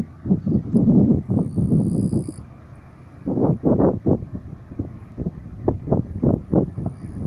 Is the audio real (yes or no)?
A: yes